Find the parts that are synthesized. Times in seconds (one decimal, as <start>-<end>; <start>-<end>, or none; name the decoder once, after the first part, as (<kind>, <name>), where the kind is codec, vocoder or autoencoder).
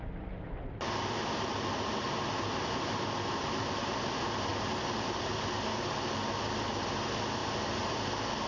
4.5-5.5 (vocoder, BigVGAN v2); 7.4-8.1